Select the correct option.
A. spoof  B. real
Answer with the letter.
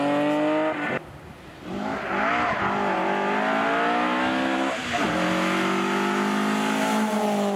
B